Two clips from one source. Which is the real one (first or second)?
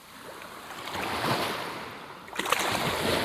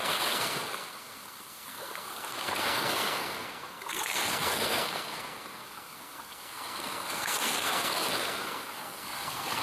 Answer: first